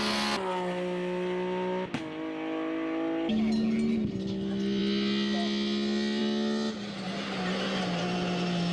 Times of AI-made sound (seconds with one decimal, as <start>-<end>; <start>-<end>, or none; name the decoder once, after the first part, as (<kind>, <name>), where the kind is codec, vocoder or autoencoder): none